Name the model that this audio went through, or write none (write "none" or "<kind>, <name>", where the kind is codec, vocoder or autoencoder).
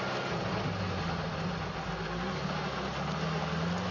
none